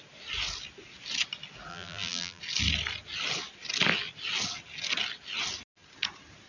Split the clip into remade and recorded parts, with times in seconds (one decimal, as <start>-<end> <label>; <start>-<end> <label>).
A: 0.0-1.7 recorded; 1.7-2.4 remade; 2.4-6.5 recorded